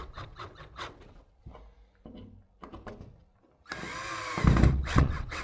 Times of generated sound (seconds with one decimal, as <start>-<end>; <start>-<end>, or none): 0.0-1.5; 4.7-5.4